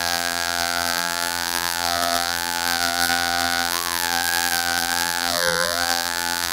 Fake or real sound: fake